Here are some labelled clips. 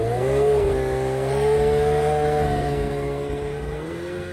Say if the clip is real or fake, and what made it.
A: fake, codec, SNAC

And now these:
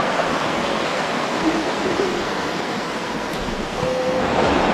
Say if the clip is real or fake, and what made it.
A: fake, codec, SNAC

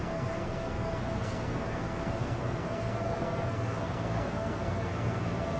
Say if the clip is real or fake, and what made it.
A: fake, codec, SNAC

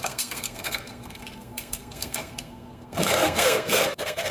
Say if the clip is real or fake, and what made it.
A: fake, codec, SNAC